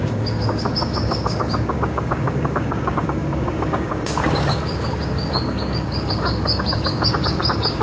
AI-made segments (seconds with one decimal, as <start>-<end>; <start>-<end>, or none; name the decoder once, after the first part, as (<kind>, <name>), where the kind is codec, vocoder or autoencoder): 0.0-7.8 (codec, DAC)